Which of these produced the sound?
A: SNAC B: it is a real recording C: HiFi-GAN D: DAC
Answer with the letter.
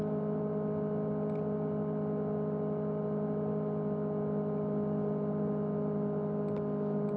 B